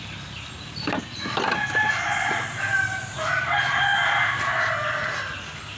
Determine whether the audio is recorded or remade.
recorded